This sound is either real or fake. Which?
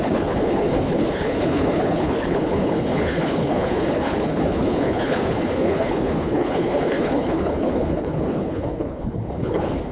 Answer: fake